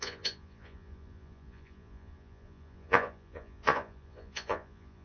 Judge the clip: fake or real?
fake